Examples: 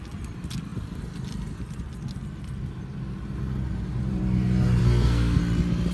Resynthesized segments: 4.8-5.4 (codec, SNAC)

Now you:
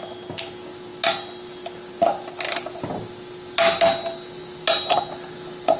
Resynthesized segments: none

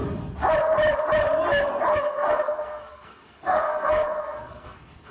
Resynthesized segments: 1.9-5.1 (codec, SNAC)

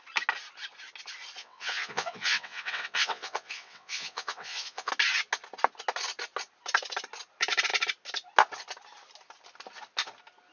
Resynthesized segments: 1.4-4.9 (vocoder, WaveNeXt)

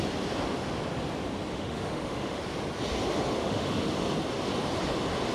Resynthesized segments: 1.5-2.4 (autoencoder, DAC-VAE); 3.4-3.9

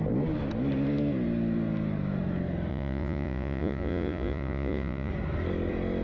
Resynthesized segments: 2.7-5.1 (vocoder, Vocos)

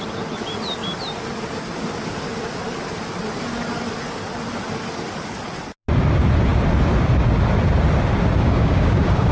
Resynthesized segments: 8.4-9.3 (codec, DAC)

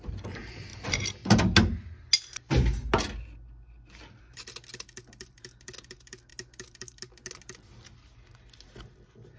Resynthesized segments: none